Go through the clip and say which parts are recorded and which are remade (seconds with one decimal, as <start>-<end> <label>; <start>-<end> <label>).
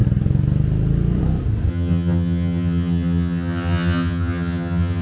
0.0-1.7 recorded; 1.7-5.0 remade